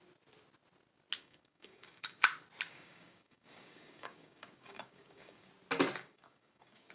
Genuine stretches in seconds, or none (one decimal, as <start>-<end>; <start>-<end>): 0.0-1.2; 2.2-2.7; 5.5-6.0